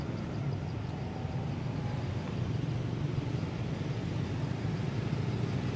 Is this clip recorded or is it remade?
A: recorded